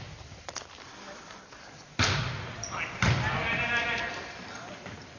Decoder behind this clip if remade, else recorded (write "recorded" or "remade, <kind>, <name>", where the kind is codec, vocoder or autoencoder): remade, vocoder, BigVGAN v2